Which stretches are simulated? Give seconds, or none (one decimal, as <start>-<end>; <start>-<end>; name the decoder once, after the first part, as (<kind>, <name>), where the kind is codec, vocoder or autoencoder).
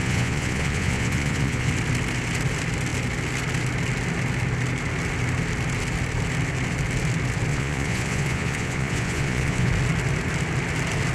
0.0-1.7 (vocoder, Vocos); 7.5-9.7